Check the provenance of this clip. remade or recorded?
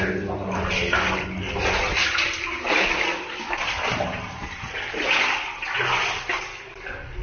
recorded